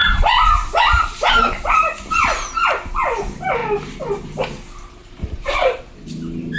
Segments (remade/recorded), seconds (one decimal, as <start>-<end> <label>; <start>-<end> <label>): 0.0-1.5 remade; 1.5-5.0 recorded; 5.0-5.8 remade; 5.8-6.6 recorded